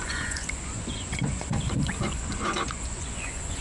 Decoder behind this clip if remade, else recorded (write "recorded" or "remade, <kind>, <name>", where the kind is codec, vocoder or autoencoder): remade, vocoder, Vocos